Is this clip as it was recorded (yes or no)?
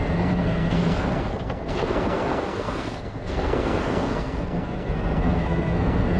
no